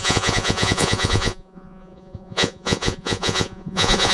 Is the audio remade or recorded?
remade